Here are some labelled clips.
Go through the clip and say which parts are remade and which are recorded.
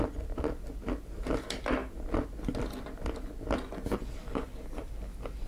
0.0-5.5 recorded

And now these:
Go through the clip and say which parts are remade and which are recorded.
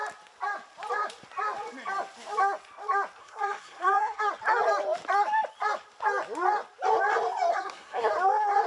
0.0-3.2 recorded; 3.2-4.2 remade; 4.2-7.5 recorded; 7.5-8.1 remade; 8.1-8.7 recorded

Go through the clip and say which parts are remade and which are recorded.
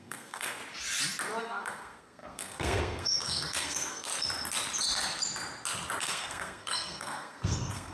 0.0-0.6 remade; 0.6-1.4 recorded; 1.4-4.1 remade; 4.1-6.0 recorded; 6.0-7.9 remade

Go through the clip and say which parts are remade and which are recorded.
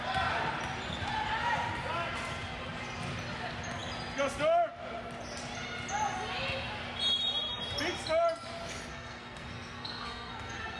0.0-8.9 recorded; 8.9-10.8 remade